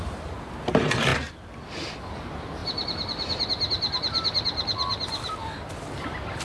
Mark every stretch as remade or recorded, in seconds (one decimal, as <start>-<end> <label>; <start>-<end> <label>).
0.0-6.4 recorded